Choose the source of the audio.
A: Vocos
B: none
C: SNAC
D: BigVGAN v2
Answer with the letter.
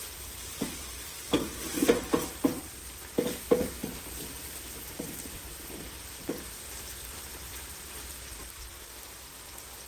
D